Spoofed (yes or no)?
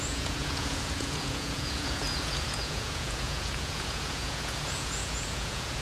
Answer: yes